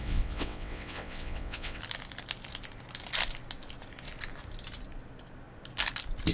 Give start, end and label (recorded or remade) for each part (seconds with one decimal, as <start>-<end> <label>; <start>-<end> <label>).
0.0-1.8 remade; 1.8-6.3 recorded